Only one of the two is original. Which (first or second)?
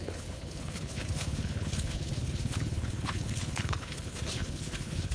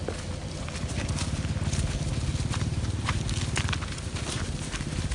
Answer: second